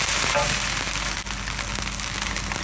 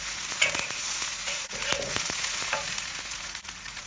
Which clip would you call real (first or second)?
first